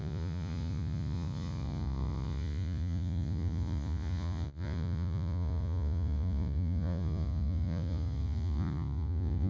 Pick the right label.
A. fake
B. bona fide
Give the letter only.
A